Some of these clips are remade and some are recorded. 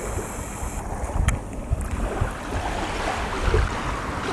recorded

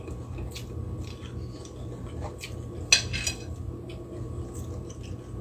recorded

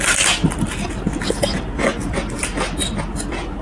recorded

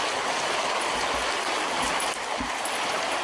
recorded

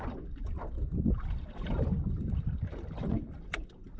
remade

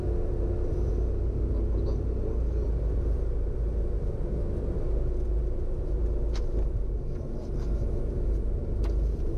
recorded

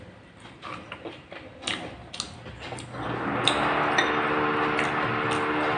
recorded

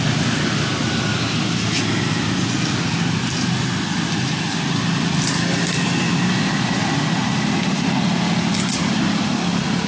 recorded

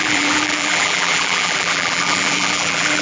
remade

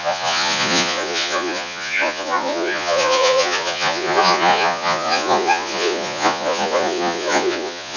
remade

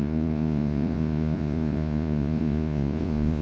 remade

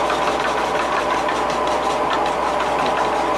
recorded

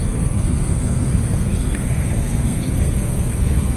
remade